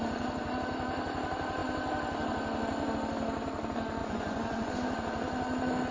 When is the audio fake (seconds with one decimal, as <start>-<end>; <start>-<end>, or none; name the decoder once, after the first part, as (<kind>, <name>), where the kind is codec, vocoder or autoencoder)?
4.0-4.7 (vocoder, Vocos)